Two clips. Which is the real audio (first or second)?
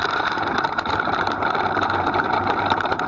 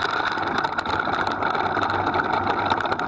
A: second